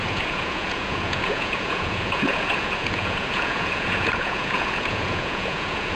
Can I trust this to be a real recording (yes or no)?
no